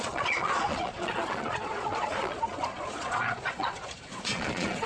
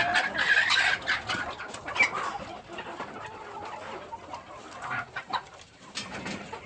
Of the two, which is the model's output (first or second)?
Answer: first